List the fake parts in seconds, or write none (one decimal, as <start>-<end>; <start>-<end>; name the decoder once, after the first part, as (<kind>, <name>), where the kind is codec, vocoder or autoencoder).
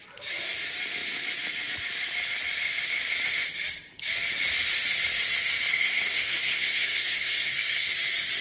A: 5.7-7.9 (codec, SNAC)